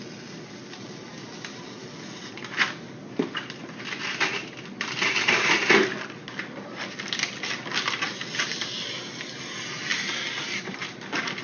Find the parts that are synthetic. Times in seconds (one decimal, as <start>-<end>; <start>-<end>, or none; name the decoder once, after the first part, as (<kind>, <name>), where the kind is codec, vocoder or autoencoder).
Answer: none